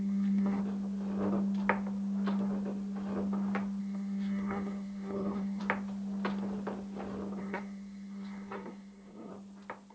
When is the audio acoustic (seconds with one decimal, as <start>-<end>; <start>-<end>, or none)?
0.6-3.8; 5.6-7.4; 9.3-9.9